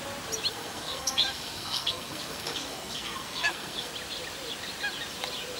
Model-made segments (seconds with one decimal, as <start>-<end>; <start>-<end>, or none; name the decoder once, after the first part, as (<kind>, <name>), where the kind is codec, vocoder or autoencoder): 0.5-3.9 (codec, SNAC)